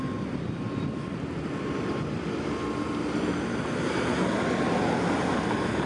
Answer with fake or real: real